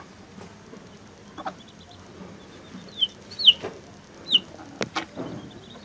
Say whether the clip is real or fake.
real